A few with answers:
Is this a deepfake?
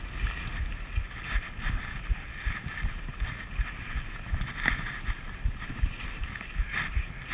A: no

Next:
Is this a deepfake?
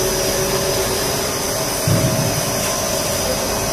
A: no